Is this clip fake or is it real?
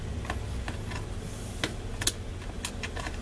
real